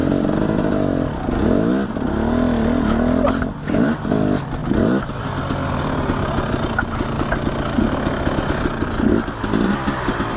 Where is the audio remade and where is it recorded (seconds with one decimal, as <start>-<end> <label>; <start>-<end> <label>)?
0.0-10.4 recorded